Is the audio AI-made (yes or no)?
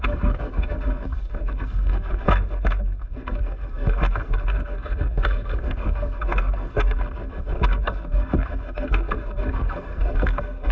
yes